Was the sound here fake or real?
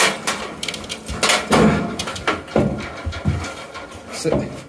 real